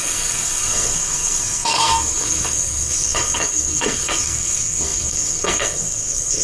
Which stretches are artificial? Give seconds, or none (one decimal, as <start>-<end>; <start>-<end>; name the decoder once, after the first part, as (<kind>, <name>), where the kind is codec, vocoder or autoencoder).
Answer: 0.0-6.4 (codec, SNAC)

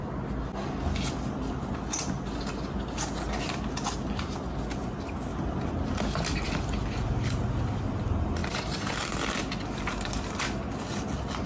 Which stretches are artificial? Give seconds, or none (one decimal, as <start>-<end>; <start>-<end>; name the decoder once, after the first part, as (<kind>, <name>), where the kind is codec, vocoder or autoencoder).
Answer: 5.3-6.0 (vocoder, BigVGAN v2); 8.4-9.1

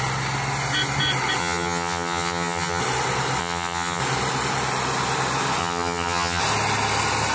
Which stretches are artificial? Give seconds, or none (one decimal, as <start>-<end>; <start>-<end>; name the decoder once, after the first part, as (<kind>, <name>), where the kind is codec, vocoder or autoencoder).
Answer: 1.4-2.8 (vocoder, HiFi-GAN); 3.4-4.0; 5.6-6.4

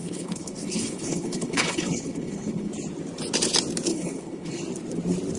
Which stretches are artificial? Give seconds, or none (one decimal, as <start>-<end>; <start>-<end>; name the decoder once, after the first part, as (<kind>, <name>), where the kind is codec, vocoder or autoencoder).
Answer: 0.0-2.7 (codec, HILCodec); 3.9-4.6

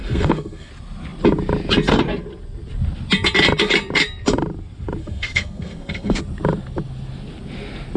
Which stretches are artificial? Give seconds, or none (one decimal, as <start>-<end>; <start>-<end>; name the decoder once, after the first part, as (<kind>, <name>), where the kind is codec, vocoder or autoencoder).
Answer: 0.0-0.7 (codec, SNAC); 5.0-6.2

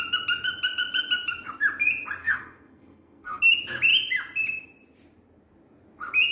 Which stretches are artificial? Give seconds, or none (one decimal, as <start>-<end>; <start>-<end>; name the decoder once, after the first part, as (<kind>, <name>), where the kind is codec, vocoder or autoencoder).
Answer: 2.2-3.4 (codec, SNAC)

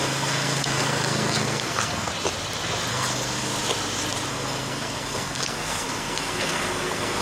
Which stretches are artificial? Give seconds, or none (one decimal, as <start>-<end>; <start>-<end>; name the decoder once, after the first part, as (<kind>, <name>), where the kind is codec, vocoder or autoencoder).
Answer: 0.0-2.1 (codec, SNAC); 2.9-3.5; 4.3-7.2